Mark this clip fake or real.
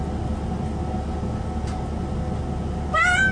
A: real